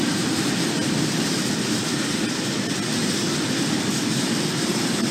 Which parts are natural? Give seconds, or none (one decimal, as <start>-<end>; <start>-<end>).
0.0-5.1